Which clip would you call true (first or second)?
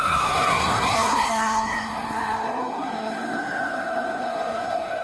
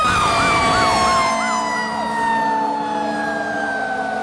second